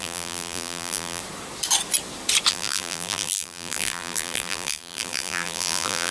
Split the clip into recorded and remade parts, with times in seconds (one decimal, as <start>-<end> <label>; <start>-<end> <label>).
0.0-1.2 remade; 1.2-2.5 recorded; 2.5-6.1 remade